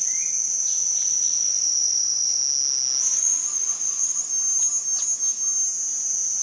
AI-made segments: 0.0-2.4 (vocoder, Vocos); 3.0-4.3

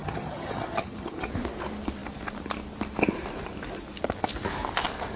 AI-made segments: 0.0-1.3 (vocoder, HiFi-GAN)

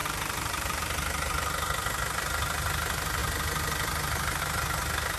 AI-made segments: 0.0-0.8 (vocoder, BigVGAN v2)

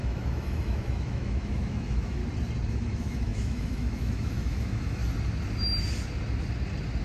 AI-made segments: 0.0-2.2 (autoencoder, DAC-VAE); 2.7-5.0